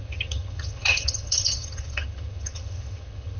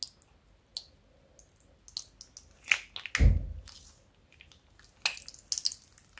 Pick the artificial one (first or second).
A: first